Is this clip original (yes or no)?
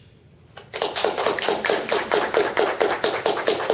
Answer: yes